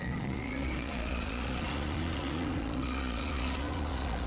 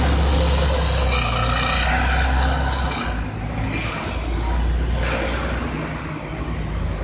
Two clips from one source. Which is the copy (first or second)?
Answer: first